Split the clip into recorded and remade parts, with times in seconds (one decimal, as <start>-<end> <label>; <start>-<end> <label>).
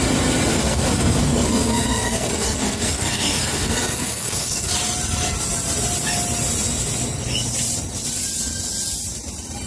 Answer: 0.0-0.5 recorded; 0.5-4.7 remade; 4.7-9.7 recorded